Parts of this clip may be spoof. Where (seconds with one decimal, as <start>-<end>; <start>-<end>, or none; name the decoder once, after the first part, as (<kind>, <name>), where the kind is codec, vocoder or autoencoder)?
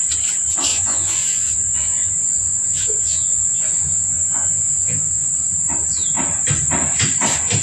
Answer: 0.7-5.3 (vocoder, Vocos)